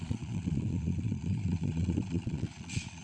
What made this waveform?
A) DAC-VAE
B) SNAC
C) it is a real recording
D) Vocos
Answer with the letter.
D